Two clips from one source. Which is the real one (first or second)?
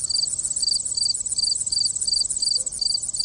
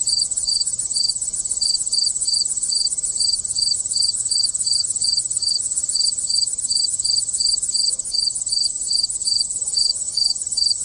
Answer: first